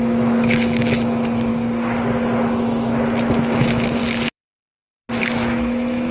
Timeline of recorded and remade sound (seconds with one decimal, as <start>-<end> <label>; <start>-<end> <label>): 0.0-1.5 remade; 1.5-2.6 recorded; 2.6-4.0 remade; 4.0-5.2 recorded; 5.2-6.1 remade